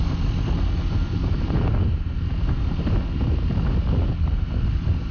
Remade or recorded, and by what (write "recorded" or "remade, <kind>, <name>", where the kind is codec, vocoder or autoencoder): recorded